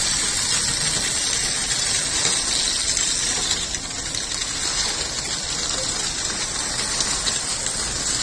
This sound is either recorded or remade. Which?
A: recorded